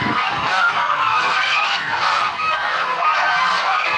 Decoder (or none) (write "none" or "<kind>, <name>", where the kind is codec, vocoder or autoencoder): codec, SNAC